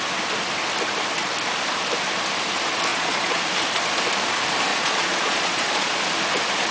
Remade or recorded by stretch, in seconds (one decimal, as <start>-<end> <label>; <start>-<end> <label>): 0.0-2.9 recorded; 2.9-3.4 remade; 3.4-4.7 recorded; 4.7-6.0 remade; 6.0-6.7 recorded